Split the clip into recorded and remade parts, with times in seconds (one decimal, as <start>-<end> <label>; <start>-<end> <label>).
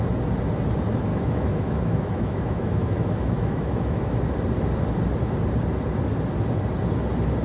0.0-1.1 recorded; 1.1-4.0 remade; 4.0-7.4 recorded